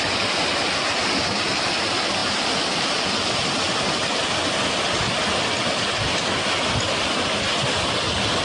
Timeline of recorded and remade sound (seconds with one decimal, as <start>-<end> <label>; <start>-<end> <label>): 0.0-2.2 recorded; 2.2-3.8 remade; 3.8-8.4 recorded